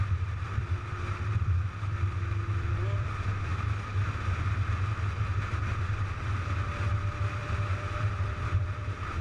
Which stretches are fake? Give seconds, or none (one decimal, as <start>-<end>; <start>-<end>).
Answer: 7.4-9.2